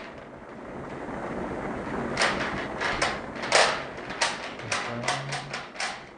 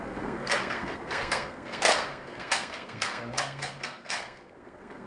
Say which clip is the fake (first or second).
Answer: second